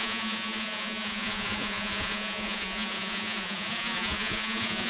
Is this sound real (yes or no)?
no